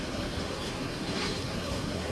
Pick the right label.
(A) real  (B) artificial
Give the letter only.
B